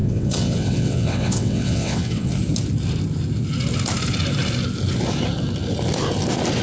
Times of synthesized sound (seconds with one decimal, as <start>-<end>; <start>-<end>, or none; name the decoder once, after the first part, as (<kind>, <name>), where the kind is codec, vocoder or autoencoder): 0.0-2.3 (vocoder, WaveNeXt)